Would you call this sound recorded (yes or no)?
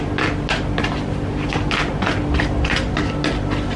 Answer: yes